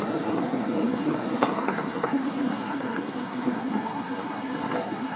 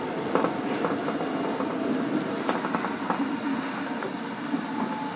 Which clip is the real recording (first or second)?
second